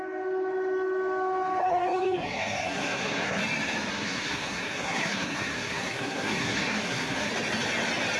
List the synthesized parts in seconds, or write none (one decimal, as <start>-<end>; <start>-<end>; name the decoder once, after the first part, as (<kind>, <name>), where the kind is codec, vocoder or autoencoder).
1.6-3.4 (codec, SNAC); 3.9-7.3